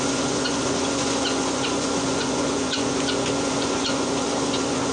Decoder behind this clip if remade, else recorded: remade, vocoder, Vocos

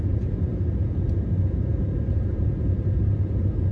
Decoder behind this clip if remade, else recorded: remade, vocoder, BigVGAN v2